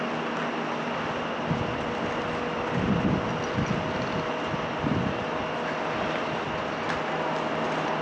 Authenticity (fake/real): real